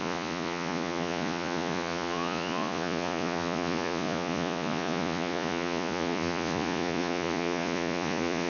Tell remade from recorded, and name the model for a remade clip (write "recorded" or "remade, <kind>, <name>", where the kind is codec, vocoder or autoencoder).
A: remade, vocoder, Vocos